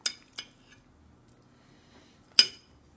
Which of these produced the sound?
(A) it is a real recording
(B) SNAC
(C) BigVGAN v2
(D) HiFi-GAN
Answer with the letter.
A